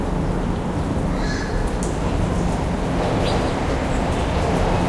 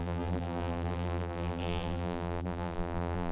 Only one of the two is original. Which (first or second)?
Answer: first